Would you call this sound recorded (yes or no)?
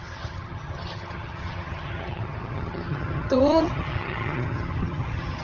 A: no